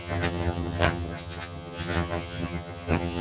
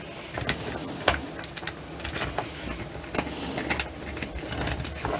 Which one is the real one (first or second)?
second